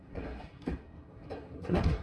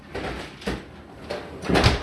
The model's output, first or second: first